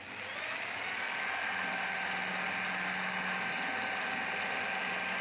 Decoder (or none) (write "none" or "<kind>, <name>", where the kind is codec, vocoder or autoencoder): none